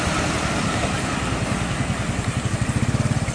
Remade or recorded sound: recorded